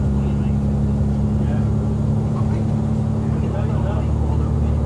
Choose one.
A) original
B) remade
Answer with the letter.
A